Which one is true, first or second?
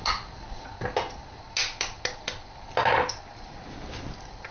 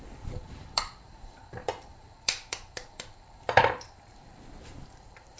first